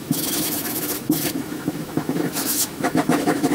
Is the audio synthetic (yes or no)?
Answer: yes